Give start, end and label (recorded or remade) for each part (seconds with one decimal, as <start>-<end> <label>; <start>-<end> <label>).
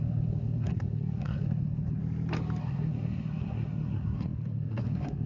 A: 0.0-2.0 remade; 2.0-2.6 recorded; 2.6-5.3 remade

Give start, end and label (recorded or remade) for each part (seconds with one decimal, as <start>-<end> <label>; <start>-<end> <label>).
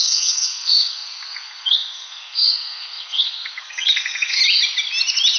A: 0.0-4.4 remade; 4.4-5.4 recorded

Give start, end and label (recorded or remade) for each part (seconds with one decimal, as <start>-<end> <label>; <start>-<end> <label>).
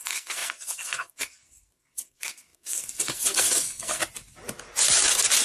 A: 0.0-4.0 remade; 4.0-5.4 recorded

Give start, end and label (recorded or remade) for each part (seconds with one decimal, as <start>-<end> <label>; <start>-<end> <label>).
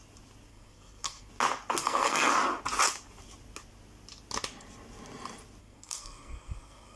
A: 0.0-0.5 recorded; 0.5-1.3 remade; 1.3-1.8 recorded; 1.8-2.3 remade; 2.3-5.6 recorded; 5.6-7.0 remade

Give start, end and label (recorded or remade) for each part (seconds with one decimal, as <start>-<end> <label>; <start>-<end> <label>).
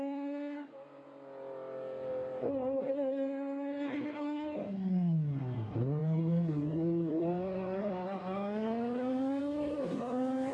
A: 0.0-0.7 remade; 0.7-2.4 recorded; 2.4-10.5 remade